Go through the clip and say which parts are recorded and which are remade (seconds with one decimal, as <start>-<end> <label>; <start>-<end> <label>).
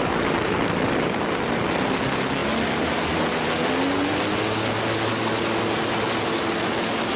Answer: 0.0-7.2 recorded